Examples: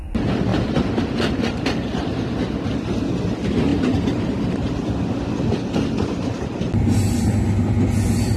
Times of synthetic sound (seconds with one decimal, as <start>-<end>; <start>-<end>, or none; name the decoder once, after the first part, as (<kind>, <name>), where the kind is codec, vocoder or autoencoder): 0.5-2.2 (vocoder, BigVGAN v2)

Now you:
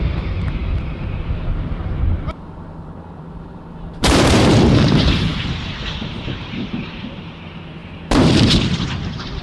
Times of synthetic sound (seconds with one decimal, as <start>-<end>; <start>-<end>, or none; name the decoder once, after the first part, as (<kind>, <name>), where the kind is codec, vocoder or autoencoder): 0.0-9.4 (vocoder, BigVGAN v2)

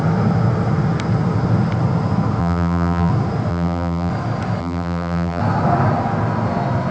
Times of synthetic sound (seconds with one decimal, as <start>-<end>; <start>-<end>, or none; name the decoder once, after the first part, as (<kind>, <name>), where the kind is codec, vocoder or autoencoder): 2.4-3.1 (vocoder, BigVGAN v2); 3.5-4.1; 4.6-5.4

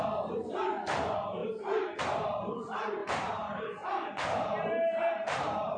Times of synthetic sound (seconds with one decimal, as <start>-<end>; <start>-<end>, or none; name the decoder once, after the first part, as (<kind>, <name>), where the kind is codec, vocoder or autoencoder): 3.0-5.8 (vocoder, BigVGAN v2)

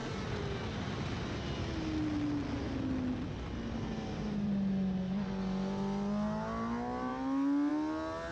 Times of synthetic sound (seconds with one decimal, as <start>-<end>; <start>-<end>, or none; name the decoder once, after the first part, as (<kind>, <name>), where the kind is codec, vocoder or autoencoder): none

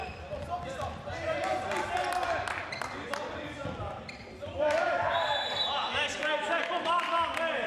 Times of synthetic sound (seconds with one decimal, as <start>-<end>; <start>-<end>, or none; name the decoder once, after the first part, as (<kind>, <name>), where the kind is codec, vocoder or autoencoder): 3.6-7.0 (vocoder, BigVGAN v2)

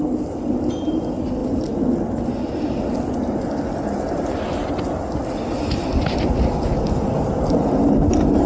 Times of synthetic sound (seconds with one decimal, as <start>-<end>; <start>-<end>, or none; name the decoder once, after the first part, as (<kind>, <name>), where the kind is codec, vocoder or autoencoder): none

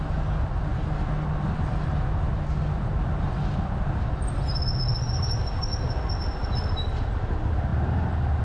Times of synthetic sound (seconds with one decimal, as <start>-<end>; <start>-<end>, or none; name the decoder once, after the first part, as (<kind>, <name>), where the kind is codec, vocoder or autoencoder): none